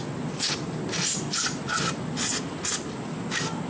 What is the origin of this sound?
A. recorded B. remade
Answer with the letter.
A